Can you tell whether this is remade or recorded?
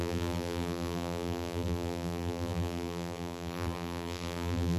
remade